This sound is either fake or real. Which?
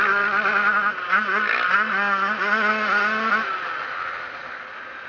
real